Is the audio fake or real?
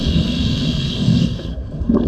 fake